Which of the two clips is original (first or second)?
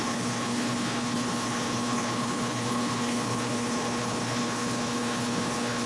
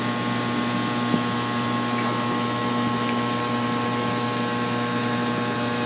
second